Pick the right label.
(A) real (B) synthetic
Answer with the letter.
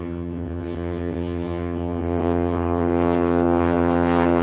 B